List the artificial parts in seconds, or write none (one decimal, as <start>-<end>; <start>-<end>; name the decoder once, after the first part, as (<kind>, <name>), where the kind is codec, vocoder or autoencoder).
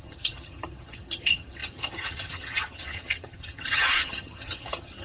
0.0-5.0 (vocoder, HiFi-GAN)